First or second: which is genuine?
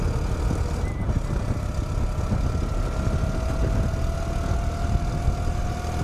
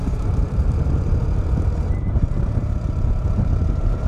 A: first